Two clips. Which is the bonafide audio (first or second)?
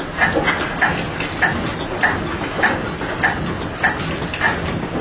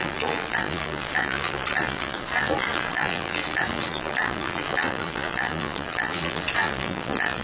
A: first